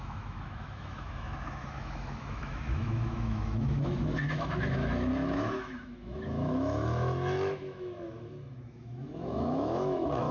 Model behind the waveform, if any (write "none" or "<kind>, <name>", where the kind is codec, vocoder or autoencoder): autoencoder, DAC-VAE